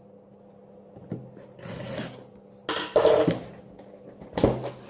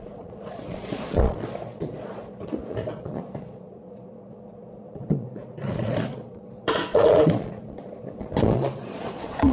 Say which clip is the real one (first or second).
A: first